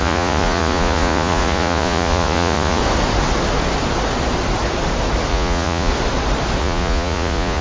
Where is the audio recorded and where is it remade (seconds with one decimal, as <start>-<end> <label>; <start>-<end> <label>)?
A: 0.0-2.8 remade; 2.8-5.3 recorded; 5.3-5.9 remade; 5.9-6.6 recorded; 6.6-7.6 remade